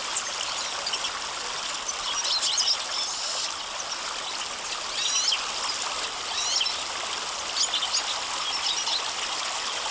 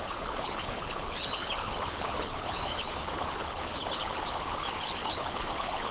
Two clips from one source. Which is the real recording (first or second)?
first